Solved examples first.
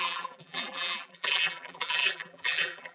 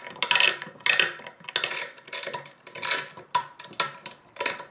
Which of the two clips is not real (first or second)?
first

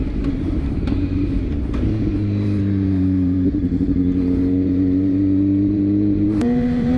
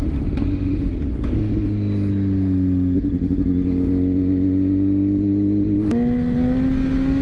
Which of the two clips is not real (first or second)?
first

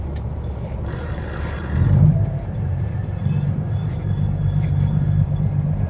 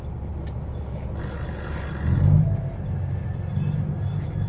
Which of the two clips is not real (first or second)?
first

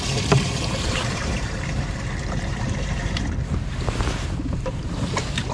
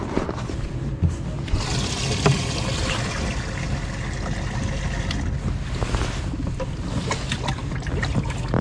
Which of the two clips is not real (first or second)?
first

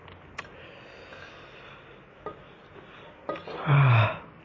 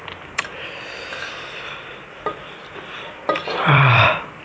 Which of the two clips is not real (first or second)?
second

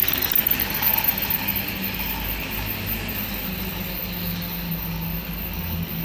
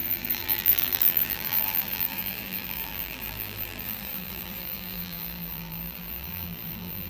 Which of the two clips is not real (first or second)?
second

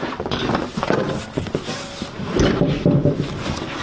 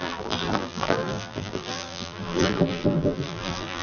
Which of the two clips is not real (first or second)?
second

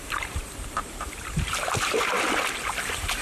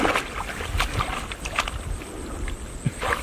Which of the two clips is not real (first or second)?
first